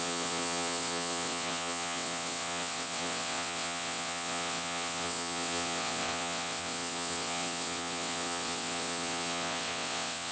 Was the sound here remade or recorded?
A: remade